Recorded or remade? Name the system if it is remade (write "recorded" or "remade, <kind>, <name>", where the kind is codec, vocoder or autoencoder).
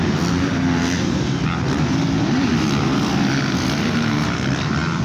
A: recorded